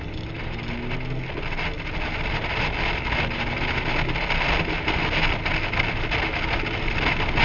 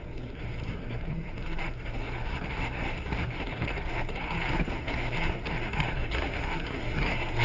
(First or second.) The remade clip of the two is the second